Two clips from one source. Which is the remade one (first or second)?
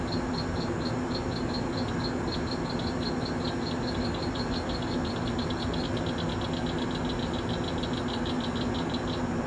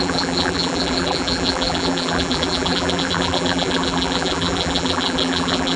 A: second